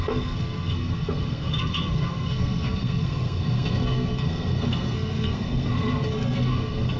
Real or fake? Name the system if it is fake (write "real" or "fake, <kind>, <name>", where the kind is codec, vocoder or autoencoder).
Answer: fake, codec, SNAC